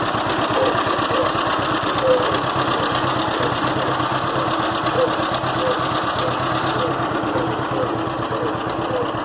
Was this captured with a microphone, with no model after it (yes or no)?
yes